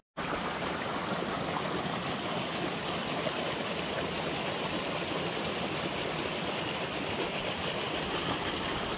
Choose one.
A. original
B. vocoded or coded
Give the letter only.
A